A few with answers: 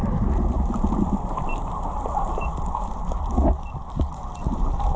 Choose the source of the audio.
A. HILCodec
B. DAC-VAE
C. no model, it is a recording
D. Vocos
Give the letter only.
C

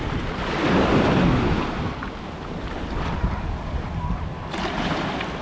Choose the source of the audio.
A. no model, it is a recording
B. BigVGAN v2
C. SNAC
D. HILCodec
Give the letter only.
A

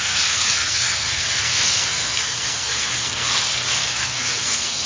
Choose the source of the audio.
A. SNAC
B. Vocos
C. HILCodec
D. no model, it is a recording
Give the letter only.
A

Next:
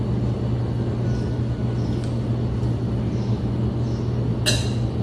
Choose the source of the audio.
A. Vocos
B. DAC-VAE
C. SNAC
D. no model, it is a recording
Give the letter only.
D